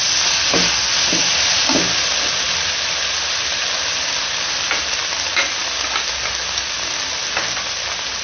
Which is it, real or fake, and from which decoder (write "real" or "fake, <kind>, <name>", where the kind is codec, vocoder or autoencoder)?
real